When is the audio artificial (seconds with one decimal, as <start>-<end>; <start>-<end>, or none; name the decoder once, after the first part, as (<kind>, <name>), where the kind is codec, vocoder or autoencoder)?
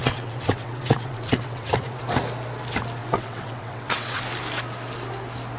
0.0-2.0 (vocoder, WaveNeXt); 3.0-4.2